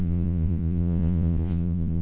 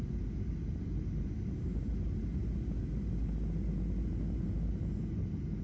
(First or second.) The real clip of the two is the second